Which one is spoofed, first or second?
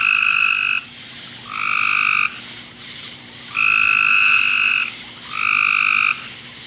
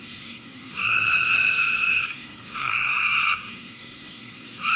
second